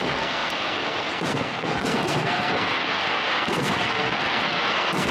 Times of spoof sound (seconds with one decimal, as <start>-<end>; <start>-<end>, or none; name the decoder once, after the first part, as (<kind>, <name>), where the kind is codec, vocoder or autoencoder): 0.0-5.1 (codec, SNAC)